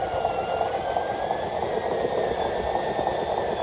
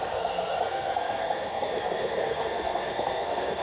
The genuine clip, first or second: first